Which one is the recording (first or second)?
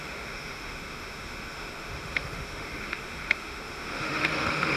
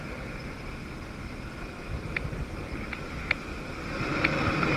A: second